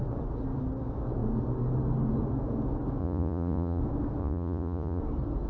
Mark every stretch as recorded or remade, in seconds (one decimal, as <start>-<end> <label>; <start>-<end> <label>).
0.0-3.0 recorded; 3.0-3.8 remade; 3.8-4.2 recorded; 4.2-5.0 remade; 5.0-5.5 recorded